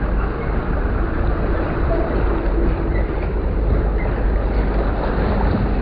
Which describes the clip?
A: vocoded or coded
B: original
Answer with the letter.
A